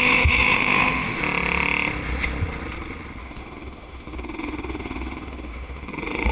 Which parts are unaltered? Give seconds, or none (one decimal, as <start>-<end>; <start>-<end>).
1.2-3.2

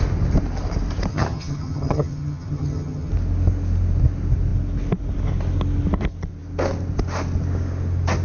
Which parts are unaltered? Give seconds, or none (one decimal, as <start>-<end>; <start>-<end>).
0.0-1.1; 3.1-8.2

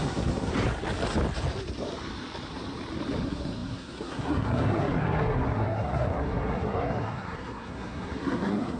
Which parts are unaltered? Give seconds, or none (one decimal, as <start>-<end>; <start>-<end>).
0.5-3.2

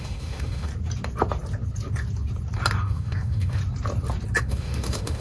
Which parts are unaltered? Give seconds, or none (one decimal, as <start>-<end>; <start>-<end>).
0.7-2.8; 3.6-4.4